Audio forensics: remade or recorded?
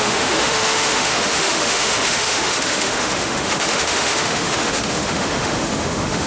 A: remade